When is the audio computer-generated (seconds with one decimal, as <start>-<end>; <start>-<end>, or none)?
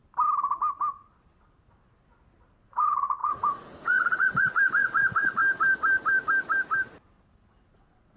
2.5-5.4; 7.7-8.2